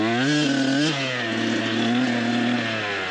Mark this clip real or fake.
real